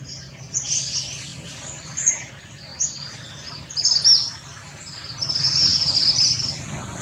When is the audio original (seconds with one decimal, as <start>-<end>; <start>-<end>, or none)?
0.0-1.3; 2.3-5.7; 6.4-7.0